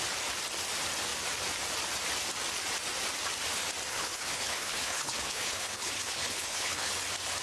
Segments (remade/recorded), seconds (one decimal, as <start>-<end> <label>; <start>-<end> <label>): 0.0-3.9 recorded; 3.9-6.9 remade; 6.9-7.4 recorded